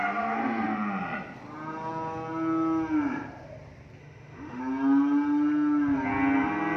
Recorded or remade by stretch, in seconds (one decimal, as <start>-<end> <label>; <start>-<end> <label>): 0.0-4.0 recorded; 4.0-4.6 remade; 4.6-6.8 recorded